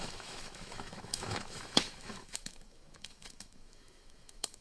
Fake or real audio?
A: fake